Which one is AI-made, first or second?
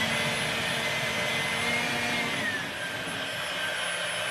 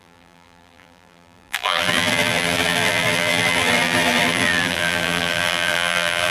second